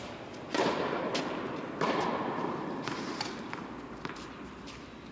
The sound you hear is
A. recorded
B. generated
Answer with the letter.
A